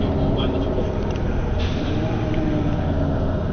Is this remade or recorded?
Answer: remade